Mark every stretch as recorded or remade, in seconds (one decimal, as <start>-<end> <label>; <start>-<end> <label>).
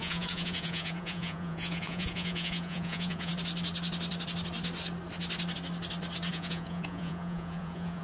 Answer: 0.0-3.3 remade; 3.3-6.3 recorded; 6.3-8.0 remade